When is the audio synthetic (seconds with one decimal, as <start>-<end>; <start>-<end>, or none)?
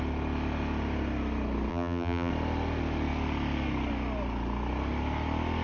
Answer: 1.7-2.3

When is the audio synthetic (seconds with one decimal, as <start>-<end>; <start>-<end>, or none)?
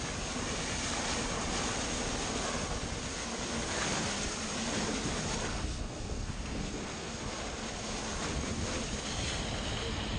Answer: 5.5-7.2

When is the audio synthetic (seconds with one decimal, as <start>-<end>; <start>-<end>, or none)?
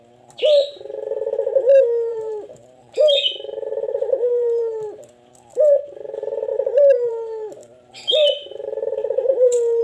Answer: 2.1-4.6; 7.6-9.8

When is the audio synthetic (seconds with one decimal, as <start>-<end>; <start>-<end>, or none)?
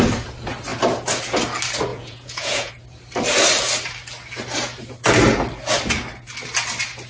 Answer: 1.9-2.7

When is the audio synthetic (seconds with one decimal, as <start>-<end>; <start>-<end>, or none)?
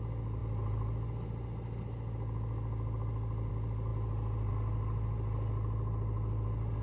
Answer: none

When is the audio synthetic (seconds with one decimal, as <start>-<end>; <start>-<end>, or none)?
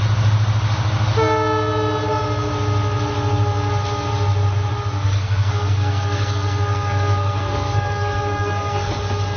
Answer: 5.0-8.9